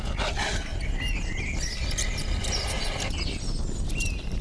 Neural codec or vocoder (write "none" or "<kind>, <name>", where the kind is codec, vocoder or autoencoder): none